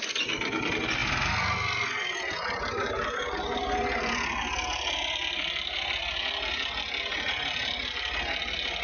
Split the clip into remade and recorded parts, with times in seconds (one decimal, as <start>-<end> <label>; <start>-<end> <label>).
0.0-8.8 recorded